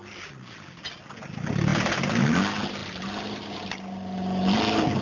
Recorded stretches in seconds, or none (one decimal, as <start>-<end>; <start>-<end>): 0.0-2.8